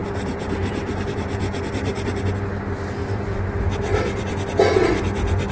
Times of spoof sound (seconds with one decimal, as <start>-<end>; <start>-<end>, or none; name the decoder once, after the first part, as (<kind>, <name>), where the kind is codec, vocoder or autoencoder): 0.0-1.6 (vocoder, BigVGAN v2); 3.0-3.6